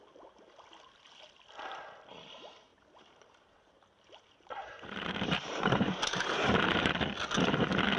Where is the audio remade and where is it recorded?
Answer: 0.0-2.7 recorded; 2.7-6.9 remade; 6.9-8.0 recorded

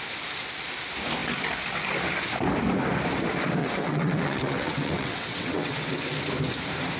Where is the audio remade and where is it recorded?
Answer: 0.0-3.6 recorded; 3.6-5.9 remade; 5.9-7.0 recorded

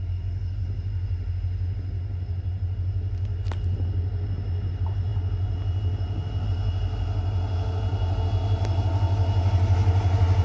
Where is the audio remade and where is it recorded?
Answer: 0.0-10.4 recorded

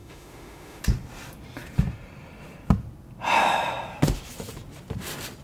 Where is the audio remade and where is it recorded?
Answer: 0.0-0.8 remade; 0.8-5.4 recorded

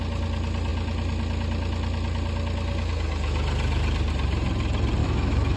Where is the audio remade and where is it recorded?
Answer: 0.0-5.0 recorded; 5.0-5.6 remade